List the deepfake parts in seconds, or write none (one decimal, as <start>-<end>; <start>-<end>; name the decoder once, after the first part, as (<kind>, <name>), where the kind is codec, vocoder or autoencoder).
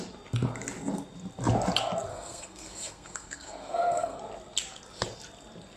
2.1-4.2 (codec, SNAC)